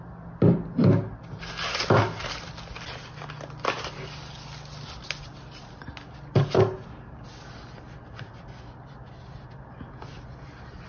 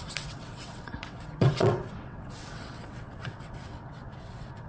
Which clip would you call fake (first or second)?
second